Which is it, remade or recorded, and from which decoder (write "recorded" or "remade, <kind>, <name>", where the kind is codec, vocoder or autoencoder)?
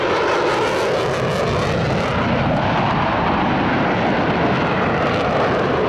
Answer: recorded